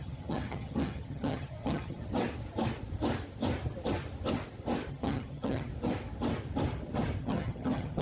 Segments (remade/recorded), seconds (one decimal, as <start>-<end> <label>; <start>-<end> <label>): 0.0-2.0 remade; 2.0-4.9 recorded; 4.9-5.7 remade; 5.7-7.2 recorded; 7.2-8.0 remade